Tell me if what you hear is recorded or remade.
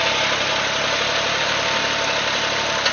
recorded